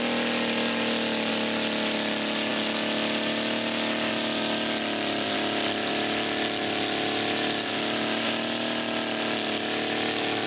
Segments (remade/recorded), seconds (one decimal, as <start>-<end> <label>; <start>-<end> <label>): 0.0-10.5 recorded